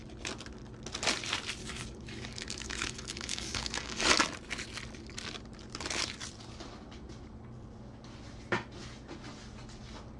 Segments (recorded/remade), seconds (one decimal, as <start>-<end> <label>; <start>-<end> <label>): 0.0-1.6 recorded; 1.6-4.1 remade; 4.1-10.2 recorded